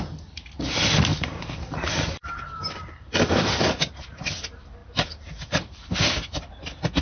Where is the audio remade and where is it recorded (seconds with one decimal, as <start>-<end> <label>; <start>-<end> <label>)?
0.0-1.1 recorded; 1.1-4.3 remade; 4.3-4.8 recorded; 4.8-5.9 remade; 5.9-7.0 recorded